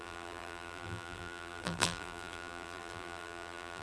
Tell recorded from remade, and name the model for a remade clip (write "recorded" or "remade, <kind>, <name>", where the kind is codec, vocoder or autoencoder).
remade, vocoder, BigVGAN v2